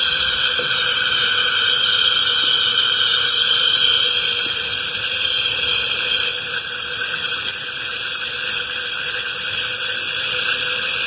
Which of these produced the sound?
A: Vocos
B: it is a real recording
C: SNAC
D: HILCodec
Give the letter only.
B